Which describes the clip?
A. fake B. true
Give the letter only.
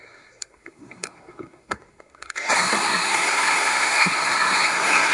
A